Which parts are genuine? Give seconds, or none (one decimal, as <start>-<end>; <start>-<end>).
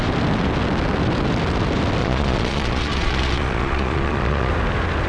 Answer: 0.0-2.0; 4.5-5.1